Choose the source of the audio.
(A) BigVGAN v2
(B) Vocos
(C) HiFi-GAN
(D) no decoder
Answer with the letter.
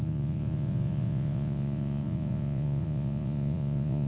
B